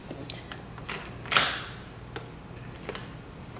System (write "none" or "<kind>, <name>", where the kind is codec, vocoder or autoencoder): none